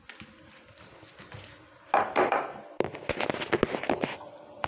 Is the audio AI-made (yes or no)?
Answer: no